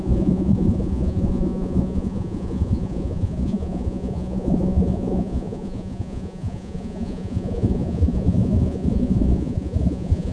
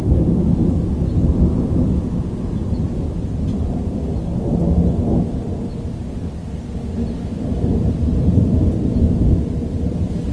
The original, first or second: second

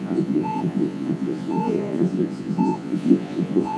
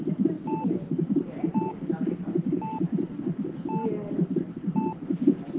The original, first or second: second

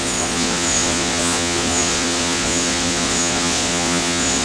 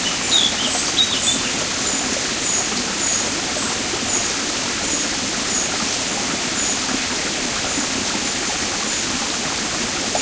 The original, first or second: second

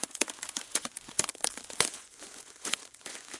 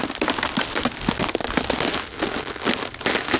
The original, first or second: second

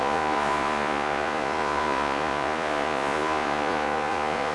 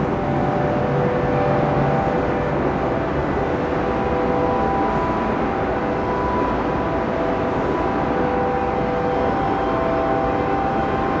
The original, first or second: second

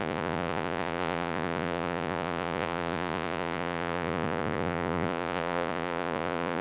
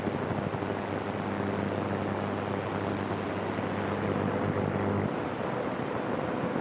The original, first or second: second